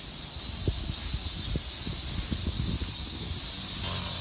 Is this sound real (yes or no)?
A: yes